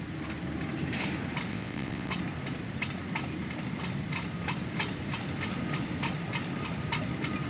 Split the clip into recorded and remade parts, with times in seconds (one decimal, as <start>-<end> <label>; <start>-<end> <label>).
0.0-1.5 recorded; 1.5-2.1 remade; 2.1-7.5 recorded